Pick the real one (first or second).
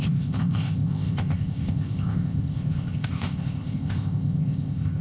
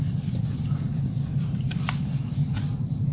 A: second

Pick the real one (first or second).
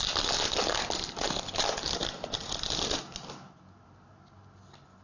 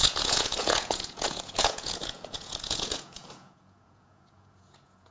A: first